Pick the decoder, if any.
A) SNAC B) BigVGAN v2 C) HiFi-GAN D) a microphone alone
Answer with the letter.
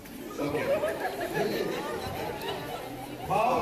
D